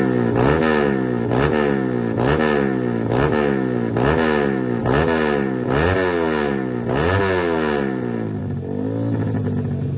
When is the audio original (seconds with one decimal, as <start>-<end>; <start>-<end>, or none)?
0.0-10.0